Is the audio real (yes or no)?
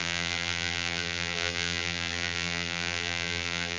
no